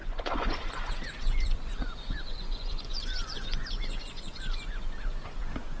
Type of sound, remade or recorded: remade